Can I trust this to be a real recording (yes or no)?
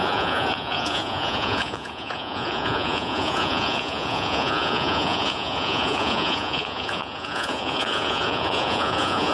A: no